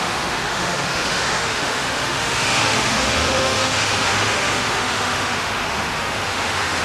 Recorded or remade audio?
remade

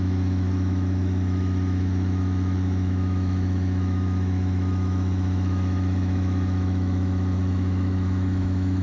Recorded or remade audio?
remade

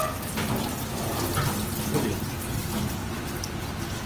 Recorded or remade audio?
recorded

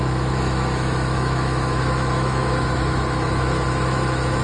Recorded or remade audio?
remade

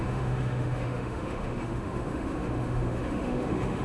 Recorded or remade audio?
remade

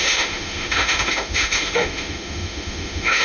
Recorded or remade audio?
remade